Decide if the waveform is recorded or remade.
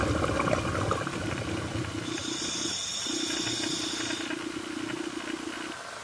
recorded